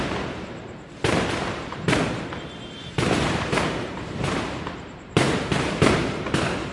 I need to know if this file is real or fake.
fake